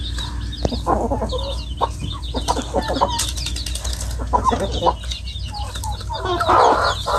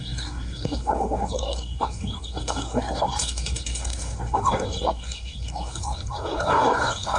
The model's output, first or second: second